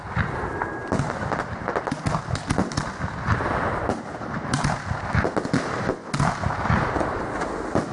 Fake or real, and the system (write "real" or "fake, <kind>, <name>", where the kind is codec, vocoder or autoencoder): real